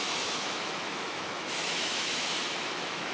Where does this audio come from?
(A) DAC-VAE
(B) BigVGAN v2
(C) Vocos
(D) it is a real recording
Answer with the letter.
A